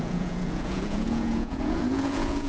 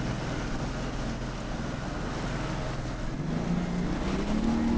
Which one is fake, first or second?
first